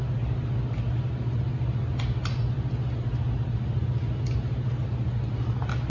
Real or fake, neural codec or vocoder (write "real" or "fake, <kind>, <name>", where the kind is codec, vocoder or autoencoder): real